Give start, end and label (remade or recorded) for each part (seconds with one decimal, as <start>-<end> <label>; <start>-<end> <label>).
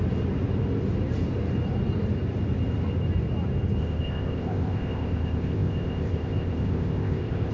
0.0-3.8 recorded; 3.8-7.5 remade